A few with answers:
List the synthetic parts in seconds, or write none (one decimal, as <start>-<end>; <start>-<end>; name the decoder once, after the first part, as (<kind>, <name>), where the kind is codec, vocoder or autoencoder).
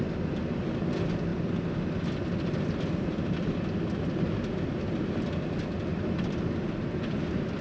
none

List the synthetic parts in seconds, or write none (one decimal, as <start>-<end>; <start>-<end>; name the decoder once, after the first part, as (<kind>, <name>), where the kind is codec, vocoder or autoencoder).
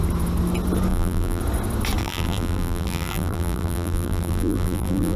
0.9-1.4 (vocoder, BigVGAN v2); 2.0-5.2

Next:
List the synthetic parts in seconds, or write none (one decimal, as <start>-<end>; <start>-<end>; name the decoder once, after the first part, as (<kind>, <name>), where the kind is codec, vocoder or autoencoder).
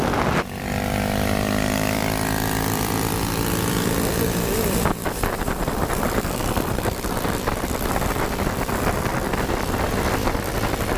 0.0-9.1 (vocoder, BigVGAN v2); 9.9-11.0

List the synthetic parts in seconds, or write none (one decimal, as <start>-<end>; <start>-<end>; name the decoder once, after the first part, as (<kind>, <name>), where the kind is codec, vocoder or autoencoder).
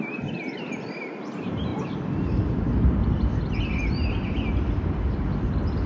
none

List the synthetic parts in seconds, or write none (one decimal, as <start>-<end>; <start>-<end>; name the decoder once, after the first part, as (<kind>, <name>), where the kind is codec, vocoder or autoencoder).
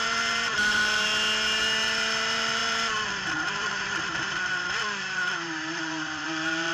0.0-1.1 (vocoder, BigVGAN v2); 1.6-6.7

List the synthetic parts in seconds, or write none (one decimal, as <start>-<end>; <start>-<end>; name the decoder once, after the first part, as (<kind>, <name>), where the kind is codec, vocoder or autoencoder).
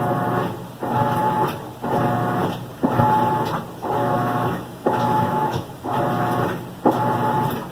4.0-6.0 (autoencoder, DAC-VAE)